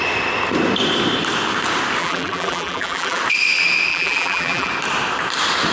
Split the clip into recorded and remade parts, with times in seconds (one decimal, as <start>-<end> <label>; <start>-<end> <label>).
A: 0.0-2.0 recorded; 2.0-3.2 remade; 3.2-3.9 recorded; 3.9-4.7 remade; 4.7-5.7 recorded